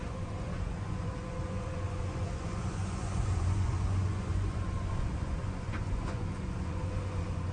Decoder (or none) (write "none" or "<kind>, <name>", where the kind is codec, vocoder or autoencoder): vocoder, Vocos